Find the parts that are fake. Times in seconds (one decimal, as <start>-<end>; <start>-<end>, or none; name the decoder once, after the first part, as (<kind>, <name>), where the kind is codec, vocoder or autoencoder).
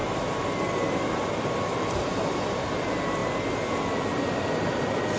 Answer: none